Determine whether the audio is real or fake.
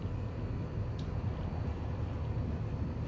real